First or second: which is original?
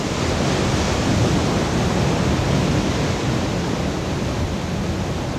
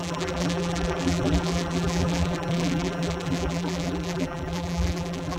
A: first